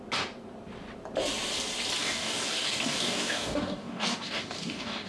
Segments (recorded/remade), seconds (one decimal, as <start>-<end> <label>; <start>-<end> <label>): 0.0-2.0 recorded; 2.0-5.1 remade